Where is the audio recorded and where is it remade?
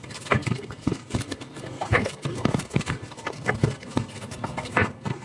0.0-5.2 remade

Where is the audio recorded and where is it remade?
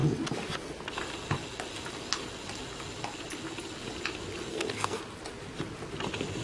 0.0-4.5 recorded; 4.5-5.0 remade; 5.0-6.4 recorded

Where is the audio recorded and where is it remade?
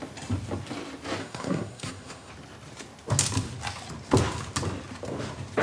0.0-1.2 recorded; 1.2-2.3 remade; 2.3-5.6 recorded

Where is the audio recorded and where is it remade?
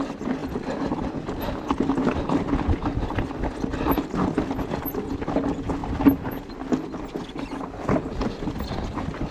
0.0-9.3 recorded